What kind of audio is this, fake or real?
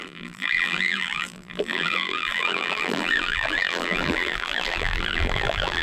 fake